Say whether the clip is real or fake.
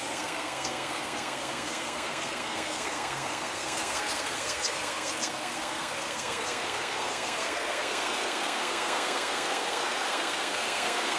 fake